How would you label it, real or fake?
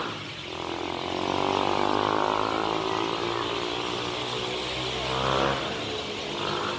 real